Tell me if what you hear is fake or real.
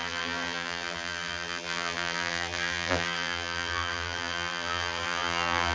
fake